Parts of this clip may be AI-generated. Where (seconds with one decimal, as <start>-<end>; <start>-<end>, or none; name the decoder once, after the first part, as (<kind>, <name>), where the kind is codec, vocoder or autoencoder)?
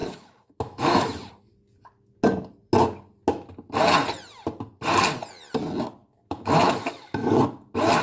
0.0-1.3 (autoencoder, DAC-VAE); 6.0-7.4